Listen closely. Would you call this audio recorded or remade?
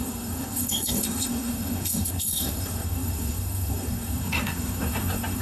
remade